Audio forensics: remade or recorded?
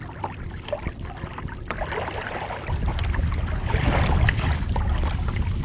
recorded